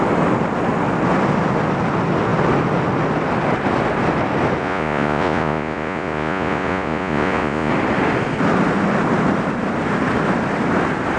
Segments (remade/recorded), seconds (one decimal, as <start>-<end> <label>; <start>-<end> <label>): 0.0-4.6 recorded; 4.6-7.7 remade; 7.7-11.2 recorded

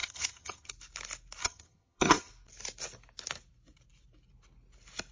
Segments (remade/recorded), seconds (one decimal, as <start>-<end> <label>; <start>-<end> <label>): 0.0-0.7 remade; 0.7-1.4 recorded; 1.4-2.3 remade; 2.3-5.1 recorded